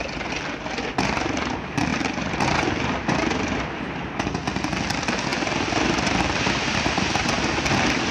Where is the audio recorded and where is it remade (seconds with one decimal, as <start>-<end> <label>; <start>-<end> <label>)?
0.0-1.9 recorded; 1.9-3.1 remade; 3.1-5.3 recorded; 5.3-6.7 remade; 6.7-8.1 recorded